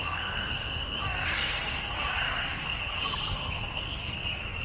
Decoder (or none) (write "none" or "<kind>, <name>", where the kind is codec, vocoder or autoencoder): codec, SNAC